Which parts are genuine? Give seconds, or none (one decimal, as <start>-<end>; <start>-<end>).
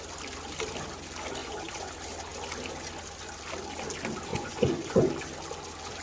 0.0-1.4; 1.9-4.3; 5.1-6.0